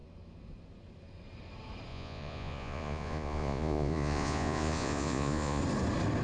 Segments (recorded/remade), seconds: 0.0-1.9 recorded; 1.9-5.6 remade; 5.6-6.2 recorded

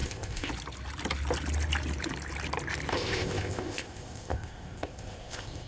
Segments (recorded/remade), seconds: 0.0-0.5 remade; 0.5-2.9 recorded; 2.9-5.7 remade